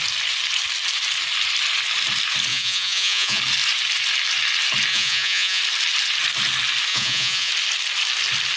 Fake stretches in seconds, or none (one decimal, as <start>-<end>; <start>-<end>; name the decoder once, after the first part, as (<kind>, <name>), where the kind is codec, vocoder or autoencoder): 2.5-3.4 (vocoder, Vocos); 4.9-5.6; 6.9-7.5